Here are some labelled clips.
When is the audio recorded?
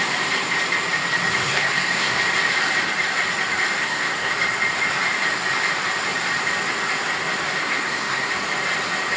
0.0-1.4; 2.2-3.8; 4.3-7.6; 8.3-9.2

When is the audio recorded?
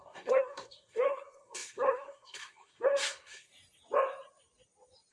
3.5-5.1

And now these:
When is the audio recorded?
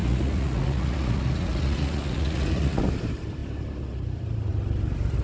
2.8-5.2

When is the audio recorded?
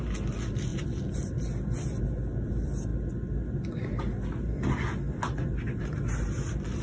0.0-6.8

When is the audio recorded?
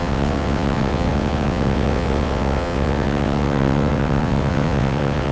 none